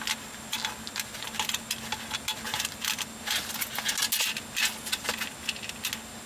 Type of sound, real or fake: real